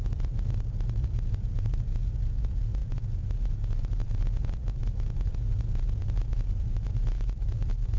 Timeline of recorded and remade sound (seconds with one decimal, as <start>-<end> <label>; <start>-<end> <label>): 0.0-8.0 remade